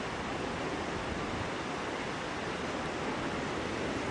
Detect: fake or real real